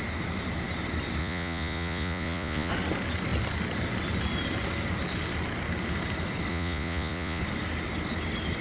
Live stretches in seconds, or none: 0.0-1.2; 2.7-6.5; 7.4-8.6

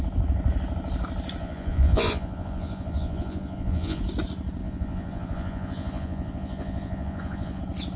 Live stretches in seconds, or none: 0.0-1.4; 4.0-4.6; 7.6-8.0

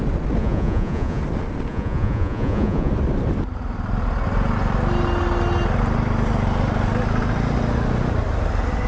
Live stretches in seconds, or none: 0.0-0.4; 1.2-1.7; 2.9-8.9

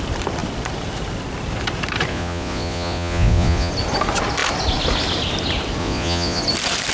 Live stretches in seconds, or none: 0.0-2.1; 3.7-5.8; 6.4-6.9